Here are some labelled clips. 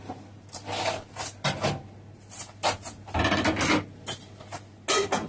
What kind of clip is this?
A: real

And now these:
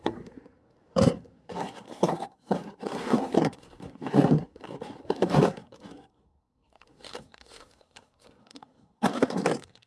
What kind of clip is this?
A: fake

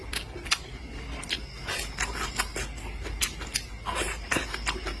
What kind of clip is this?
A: real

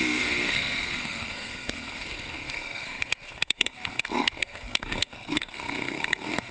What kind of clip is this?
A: fake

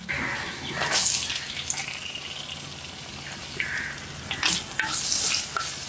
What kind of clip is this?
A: real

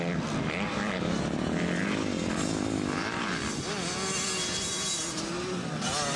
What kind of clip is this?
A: real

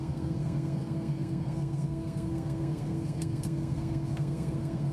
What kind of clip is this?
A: fake